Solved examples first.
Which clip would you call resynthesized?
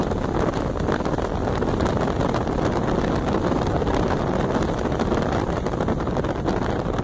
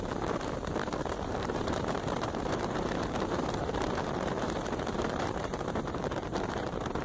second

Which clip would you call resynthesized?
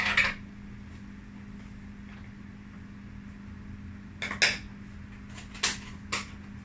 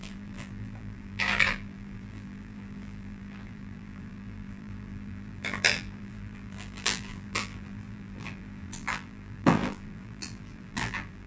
second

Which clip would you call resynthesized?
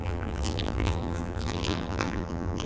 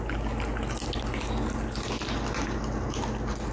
first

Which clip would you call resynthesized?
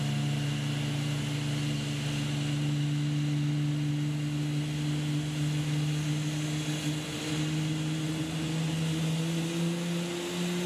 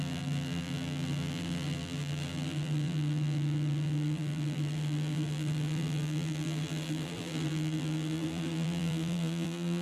second